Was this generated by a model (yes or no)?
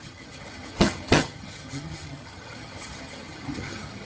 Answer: yes